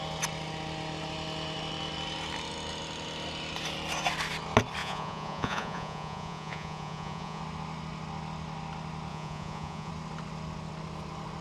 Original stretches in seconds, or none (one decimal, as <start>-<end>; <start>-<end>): 0.0-4.8; 7.4-9.1; 9.9-11.4